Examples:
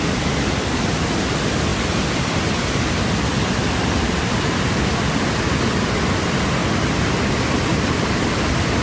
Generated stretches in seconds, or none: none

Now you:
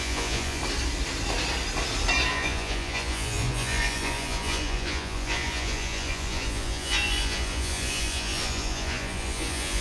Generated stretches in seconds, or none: 0.0-0.6; 2.3-9.8

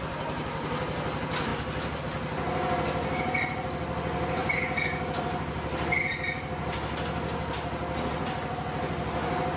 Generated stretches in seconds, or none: none